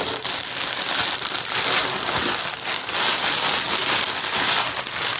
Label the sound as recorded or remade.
recorded